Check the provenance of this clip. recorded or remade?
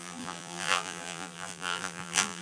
remade